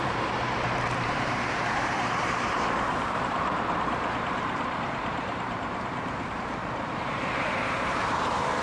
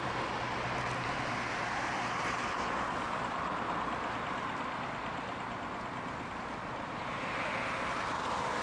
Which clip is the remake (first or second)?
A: first